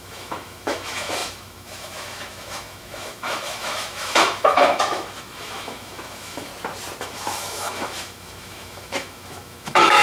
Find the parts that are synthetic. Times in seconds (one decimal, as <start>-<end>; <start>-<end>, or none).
0.0-6.5; 7.0-10.0